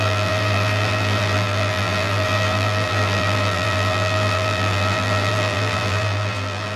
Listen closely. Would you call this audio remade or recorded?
remade